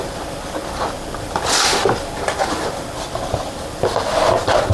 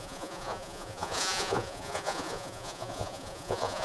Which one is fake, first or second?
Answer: second